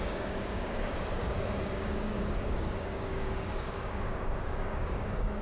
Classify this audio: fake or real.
fake